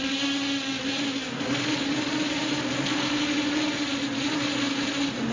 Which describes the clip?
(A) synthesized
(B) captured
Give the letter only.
B